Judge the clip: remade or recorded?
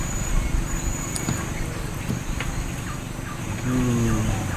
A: recorded